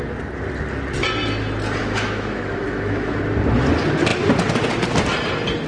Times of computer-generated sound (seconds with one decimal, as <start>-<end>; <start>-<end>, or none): 1.8-3.2